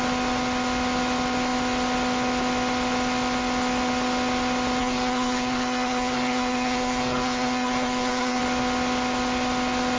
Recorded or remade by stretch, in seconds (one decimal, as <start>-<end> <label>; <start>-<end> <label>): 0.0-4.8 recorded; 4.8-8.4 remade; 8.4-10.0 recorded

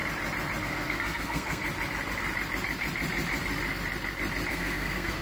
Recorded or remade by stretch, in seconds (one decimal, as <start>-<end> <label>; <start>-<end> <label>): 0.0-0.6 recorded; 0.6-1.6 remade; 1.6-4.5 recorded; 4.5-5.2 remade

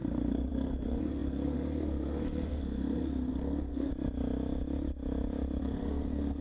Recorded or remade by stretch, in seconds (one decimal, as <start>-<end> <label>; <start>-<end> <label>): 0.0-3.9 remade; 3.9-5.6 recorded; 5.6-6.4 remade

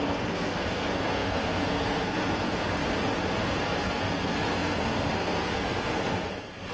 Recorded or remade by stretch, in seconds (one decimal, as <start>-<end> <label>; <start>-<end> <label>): 0.0-2.8 remade; 2.8-3.4 recorded; 3.4-6.7 remade

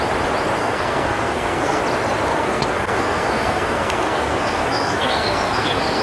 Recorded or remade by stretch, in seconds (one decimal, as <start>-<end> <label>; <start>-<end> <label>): 0.0-0.6 recorded; 0.6-1.8 remade; 1.8-2.3 recorded; 2.3-6.0 remade

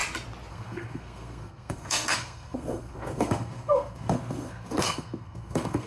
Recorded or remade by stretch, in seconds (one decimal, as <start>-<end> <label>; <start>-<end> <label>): 0.0-0.5 recorded; 0.5-5.9 remade